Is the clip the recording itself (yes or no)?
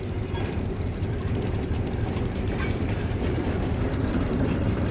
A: no